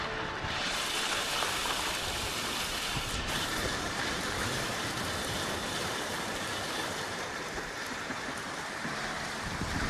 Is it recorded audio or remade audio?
remade